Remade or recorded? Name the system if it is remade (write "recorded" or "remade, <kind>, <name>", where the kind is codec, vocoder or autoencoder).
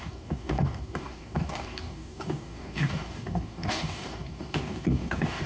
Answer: remade, codec, DAC